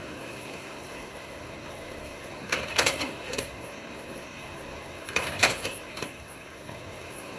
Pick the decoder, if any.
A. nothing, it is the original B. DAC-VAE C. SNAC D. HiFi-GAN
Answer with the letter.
C